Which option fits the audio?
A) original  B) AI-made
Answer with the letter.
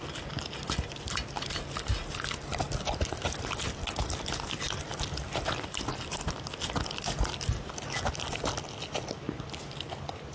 A